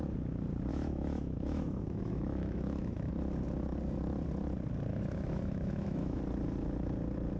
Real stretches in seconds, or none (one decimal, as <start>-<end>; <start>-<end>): 0.0-0.7; 3.1-4.9; 6.2-7.4